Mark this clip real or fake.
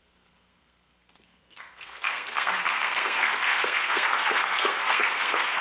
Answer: fake